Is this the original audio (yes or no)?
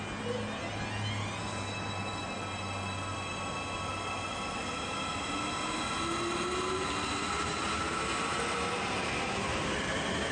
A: yes